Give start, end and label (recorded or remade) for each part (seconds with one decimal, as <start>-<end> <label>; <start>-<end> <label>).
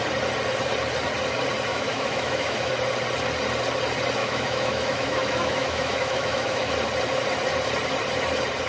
0.0-1.7 recorded; 1.7-2.7 remade; 2.7-4.2 recorded; 4.2-6.7 remade; 6.7-8.7 recorded